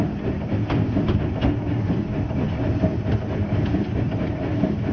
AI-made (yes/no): no